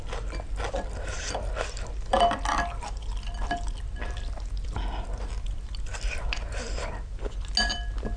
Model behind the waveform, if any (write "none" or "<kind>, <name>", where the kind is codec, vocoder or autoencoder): none